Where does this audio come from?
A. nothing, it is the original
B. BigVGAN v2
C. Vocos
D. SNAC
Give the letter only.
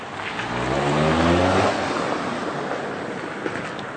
A